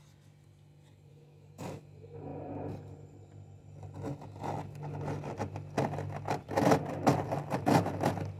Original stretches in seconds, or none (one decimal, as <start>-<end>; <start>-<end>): 0.0-1.1; 1.8-8.4